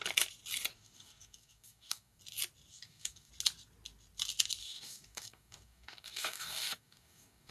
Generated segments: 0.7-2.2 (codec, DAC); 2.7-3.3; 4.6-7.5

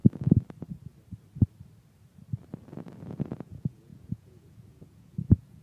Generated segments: 3.4-5.6 (vocoder, Vocos)

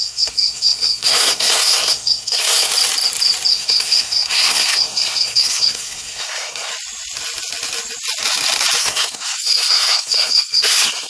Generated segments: 0.0-2.7 (codec, SNAC); 3.5-6.7; 8.8-11.1

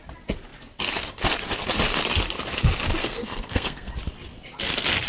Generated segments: 3.0-3.9 (codec, SNAC)

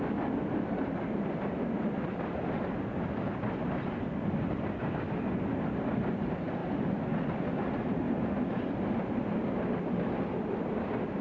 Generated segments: none

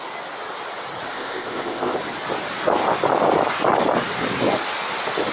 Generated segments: 1.1-2.0 (codec, ZipCodec)